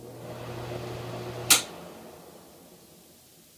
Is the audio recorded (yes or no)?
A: yes